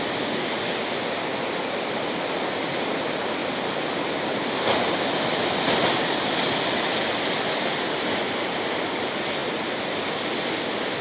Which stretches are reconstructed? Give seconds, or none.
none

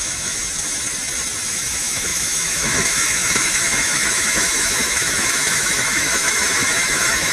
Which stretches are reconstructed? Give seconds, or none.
0.0-0.4 (autoencoder, DAC-VAE); 1.5-7.3

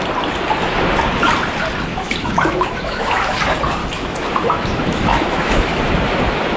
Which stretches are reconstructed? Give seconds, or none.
1.9-3.4 (autoencoder, DAC-VAE); 3.8-5.8

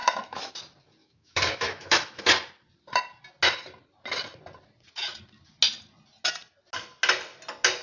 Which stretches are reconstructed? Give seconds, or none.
0.0-0.5 (autoencoder, DAC-VAE); 1.0-2.2

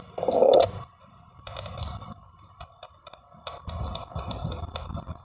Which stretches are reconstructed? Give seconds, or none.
none